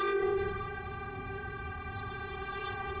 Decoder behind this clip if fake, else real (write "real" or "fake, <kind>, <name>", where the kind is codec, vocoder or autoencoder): fake, codec, ZipCodec